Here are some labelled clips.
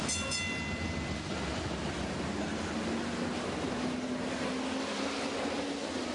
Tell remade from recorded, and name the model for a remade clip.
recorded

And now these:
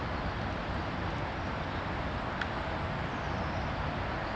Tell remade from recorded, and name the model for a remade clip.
recorded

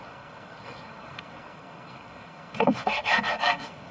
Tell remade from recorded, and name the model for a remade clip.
remade, codec, SNAC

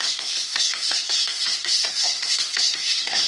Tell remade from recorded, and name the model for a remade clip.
remade, codec, SNAC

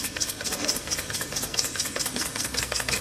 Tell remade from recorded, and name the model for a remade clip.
remade, codec, SNAC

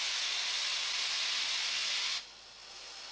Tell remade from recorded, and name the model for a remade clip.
recorded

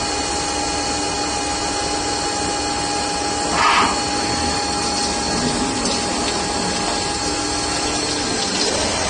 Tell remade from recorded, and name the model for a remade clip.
recorded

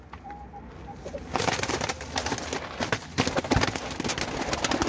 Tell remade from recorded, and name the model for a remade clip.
recorded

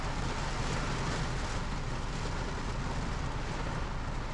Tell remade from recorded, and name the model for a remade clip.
recorded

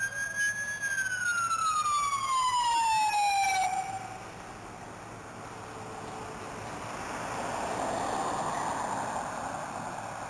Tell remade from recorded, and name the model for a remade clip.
recorded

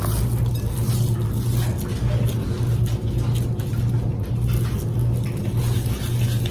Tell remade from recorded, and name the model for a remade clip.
recorded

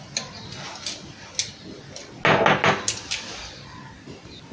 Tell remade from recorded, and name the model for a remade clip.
recorded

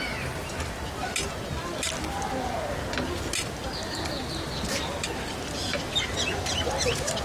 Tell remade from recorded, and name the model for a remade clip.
recorded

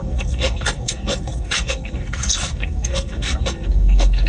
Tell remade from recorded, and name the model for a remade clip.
remade, codec, SNAC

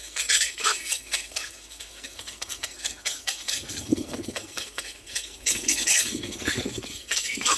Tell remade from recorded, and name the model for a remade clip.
remade, codec, SNAC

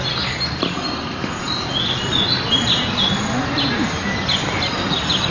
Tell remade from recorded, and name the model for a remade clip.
recorded